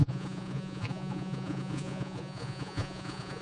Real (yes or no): no